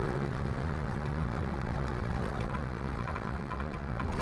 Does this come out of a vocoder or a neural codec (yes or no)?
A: yes